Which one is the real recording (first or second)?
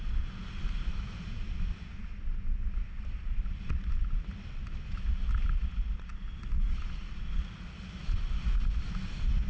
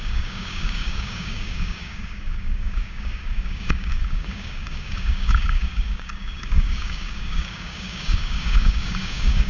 first